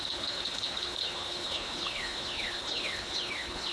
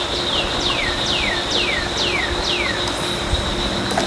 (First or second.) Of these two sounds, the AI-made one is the first